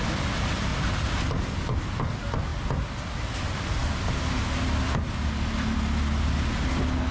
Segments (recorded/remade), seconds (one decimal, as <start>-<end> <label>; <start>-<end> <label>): 0.0-0.7 recorded; 0.7-2.0 remade; 2.0-7.1 recorded